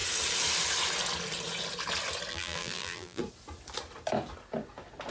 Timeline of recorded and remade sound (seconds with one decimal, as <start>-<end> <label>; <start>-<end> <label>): 0.0-2.3 recorded; 2.3-3.2 remade; 3.2-5.1 recorded